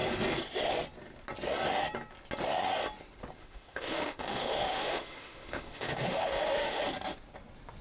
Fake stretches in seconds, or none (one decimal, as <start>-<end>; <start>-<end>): 3.4-6.8